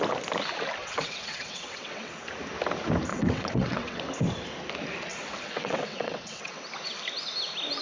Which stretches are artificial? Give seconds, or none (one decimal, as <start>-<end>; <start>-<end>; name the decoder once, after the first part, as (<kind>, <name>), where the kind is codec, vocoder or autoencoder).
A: 0.8-2.1 (vocoder, WaveNeXt); 3.1-4.0; 5.1-6.6